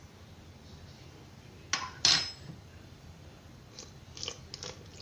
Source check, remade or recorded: recorded